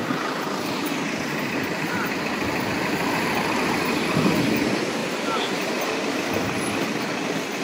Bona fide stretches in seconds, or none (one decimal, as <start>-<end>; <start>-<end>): 4.2-5.0; 6.7-7.6